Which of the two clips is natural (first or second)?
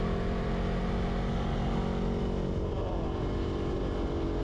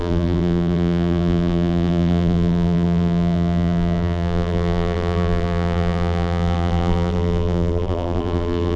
first